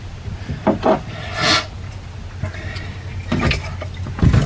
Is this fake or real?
real